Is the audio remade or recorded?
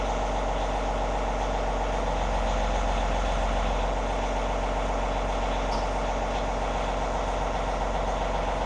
recorded